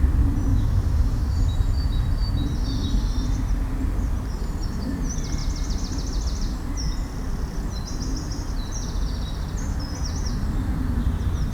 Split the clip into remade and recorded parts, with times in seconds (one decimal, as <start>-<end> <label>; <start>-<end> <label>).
0.0-0.5 recorded; 0.5-1.2 remade; 1.2-11.5 recorded